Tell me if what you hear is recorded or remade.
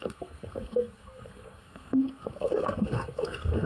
remade